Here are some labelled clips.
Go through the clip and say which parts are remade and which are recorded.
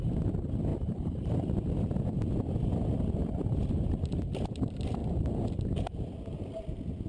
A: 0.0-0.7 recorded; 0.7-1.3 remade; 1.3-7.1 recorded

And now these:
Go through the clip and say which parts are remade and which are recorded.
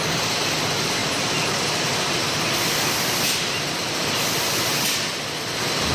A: 0.0-5.9 recorded